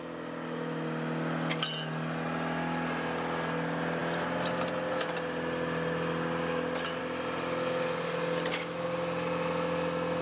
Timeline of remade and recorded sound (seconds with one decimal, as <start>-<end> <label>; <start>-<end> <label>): 0.0-10.2 recorded